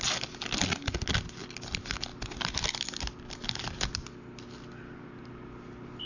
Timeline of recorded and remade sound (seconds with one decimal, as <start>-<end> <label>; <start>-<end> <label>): 0.0-6.1 recorded